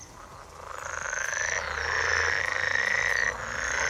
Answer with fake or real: real